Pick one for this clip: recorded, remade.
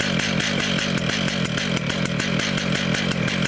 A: recorded